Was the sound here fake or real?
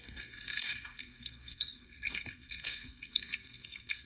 fake